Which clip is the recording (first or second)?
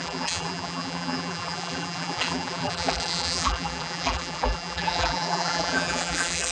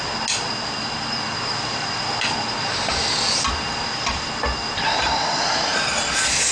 second